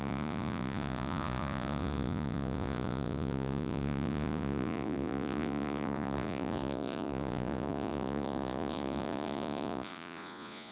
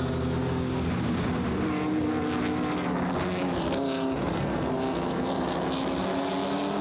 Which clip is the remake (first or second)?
first